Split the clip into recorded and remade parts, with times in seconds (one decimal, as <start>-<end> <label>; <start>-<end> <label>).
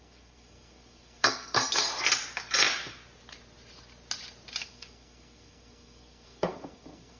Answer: 0.0-1.9 remade; 1.9-4.6 recorded; 4.6-7.2 remade